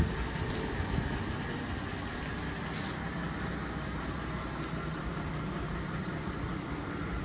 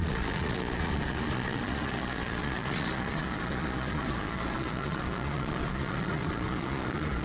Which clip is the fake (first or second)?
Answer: second